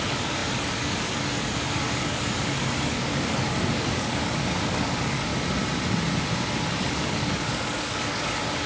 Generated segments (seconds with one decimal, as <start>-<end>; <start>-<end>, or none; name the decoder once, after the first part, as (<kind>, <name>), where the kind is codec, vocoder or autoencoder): 0.0-5.3 (codec, DAC); 6.7-8.7